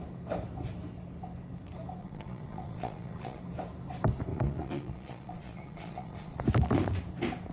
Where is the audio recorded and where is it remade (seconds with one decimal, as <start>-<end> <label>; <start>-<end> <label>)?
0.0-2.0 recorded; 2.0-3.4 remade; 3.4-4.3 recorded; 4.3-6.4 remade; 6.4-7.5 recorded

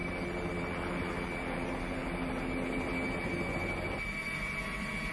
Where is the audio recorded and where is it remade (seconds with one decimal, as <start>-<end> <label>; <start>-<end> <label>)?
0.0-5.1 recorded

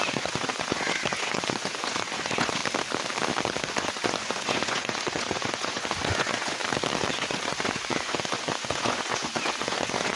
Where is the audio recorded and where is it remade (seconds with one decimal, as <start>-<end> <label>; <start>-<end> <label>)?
0.0-2.6 remade; 2.6-3.7 recorded; 3.7-6.6 remade; 6.6-7.1 recorded; 7.1-10.2 remade